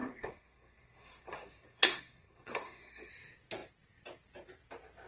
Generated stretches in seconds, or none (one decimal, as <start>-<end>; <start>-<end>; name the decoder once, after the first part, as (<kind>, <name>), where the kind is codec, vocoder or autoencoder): 0.0-3.1 (codec, SNAC)